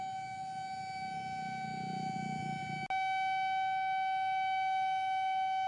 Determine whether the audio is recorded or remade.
recorded